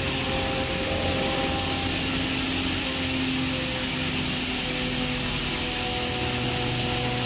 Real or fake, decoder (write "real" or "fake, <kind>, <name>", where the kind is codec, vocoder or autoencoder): real